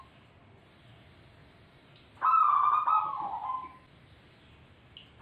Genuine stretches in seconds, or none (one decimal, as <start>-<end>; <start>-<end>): 0.0-5.2